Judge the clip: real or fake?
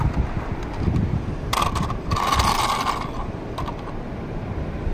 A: real